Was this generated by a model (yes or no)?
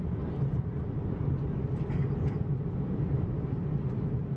yes